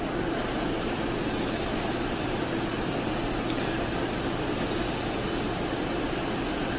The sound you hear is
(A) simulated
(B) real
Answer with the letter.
B